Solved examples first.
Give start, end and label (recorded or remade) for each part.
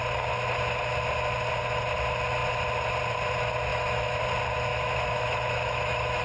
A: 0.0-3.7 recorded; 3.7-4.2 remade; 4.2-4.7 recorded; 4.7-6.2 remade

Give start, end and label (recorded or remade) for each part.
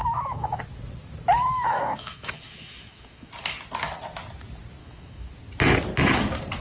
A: 0.0-0.6 remade; 0.6-1.5 recorded; 1.5-3.3 remade; 3.3-4.8 recorded; 4.8-5.3 remade; 5.3-6.6 recorded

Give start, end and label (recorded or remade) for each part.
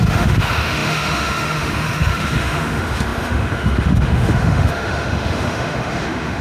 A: 0.0-6.4 remade